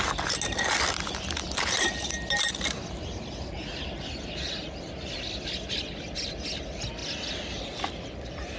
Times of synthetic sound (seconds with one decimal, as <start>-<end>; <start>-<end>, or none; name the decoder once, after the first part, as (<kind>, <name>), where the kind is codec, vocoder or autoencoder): none